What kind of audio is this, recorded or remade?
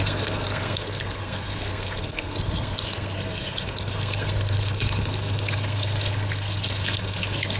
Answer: remade